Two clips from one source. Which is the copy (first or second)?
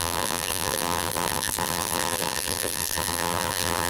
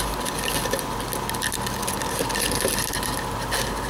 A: first